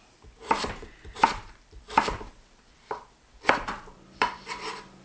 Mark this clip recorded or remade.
remade